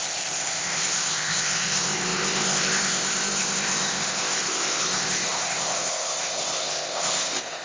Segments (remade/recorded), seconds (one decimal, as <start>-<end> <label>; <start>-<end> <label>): 0.0-7.6 remade